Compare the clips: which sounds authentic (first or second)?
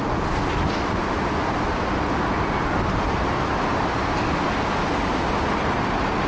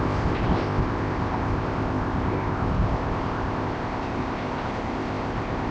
first